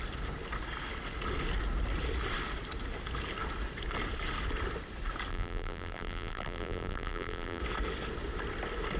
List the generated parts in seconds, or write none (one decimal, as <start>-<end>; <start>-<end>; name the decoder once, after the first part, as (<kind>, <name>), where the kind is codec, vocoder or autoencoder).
5.3-7.6 (vocoder, BigVGAN v2)